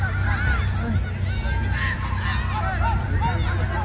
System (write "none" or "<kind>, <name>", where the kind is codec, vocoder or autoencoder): none